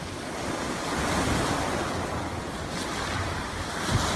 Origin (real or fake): real